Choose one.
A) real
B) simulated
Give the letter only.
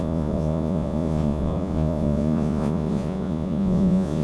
B